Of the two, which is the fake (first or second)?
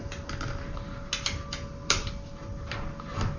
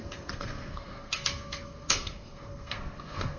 second